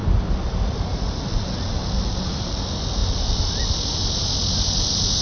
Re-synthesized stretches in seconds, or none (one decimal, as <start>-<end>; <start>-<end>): none